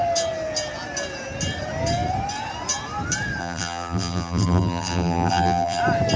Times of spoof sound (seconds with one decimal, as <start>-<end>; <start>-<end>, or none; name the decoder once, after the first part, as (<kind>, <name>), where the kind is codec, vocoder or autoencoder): 3.4-5.8 (vocoder, BigVGAN v2)